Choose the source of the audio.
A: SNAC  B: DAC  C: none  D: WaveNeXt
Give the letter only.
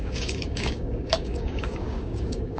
B